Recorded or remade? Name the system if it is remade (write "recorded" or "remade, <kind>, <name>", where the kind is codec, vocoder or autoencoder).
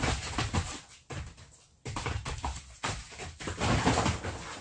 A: recorded